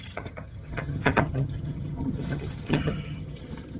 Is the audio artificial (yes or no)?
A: yes